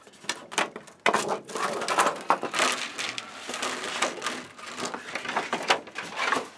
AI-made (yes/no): no